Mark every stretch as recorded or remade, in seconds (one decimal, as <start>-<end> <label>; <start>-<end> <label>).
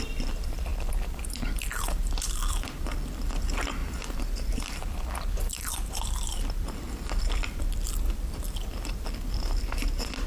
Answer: 0.0-10.3 remade